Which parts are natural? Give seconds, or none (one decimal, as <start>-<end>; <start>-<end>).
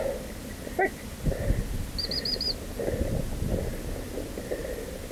0.0-5.1